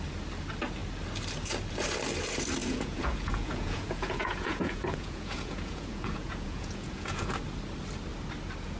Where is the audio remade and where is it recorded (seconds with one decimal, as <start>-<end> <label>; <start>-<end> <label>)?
0.0-2.6 recorded; 2.6-7.3 remade; 7.3-8.8 recorded